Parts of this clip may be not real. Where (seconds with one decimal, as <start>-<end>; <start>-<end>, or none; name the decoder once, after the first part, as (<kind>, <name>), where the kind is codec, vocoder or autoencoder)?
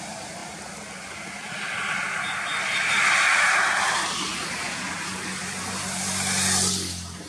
none